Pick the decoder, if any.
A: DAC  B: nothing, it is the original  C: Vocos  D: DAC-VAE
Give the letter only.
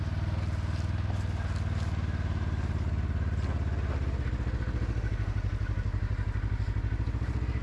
B